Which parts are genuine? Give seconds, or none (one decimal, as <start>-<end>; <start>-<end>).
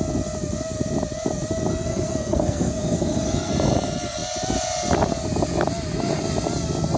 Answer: 0.0-1.7; 3.5-7.0